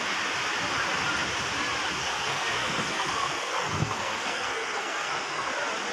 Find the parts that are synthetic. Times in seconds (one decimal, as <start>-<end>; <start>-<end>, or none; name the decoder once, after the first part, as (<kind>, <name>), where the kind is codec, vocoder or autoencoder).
2.0-5.5 (codec, SNAC)